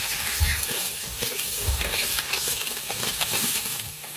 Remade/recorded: remade